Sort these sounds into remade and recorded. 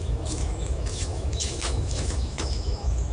remade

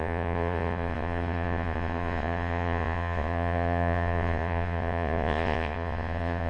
remade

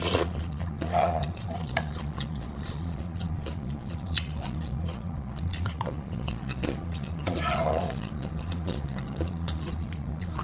remade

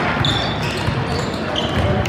recorded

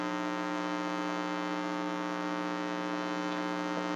remade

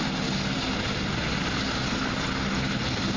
recorded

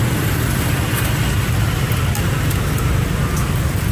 recorded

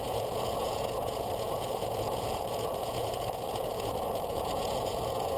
remade